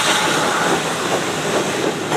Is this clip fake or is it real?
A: real